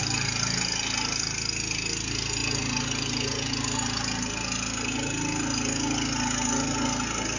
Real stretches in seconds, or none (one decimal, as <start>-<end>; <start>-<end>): 0.0-7.4